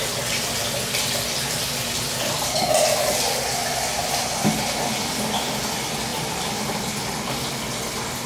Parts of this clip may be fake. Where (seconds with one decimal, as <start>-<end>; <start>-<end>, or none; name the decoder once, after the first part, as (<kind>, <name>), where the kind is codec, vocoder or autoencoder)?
3.9-5.6 (vocoder, BigVGAN v2); 6.1-7.1